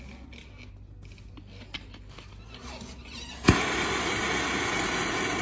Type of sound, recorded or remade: recorded